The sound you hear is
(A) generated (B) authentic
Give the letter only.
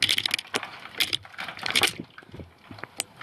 B